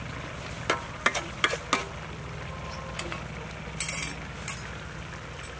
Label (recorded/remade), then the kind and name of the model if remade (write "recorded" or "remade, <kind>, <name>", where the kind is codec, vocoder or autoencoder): recorded